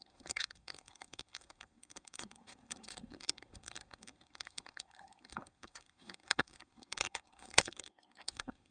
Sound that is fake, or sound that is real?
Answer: fake